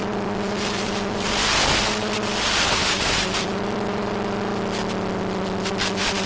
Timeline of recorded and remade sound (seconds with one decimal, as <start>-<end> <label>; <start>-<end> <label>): 0.0-1.3 remade; 1.3-2.8 recorded; 2.8-4.1 remade; 4.1-6.3 recorded